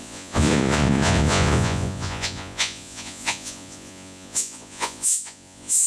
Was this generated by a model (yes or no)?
yes